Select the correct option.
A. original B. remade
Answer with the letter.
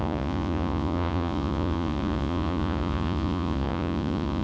B